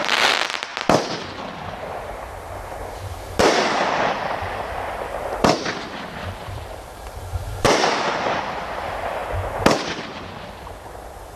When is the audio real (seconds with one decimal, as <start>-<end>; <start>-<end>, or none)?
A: 0.7-3.4; 9.2-10.2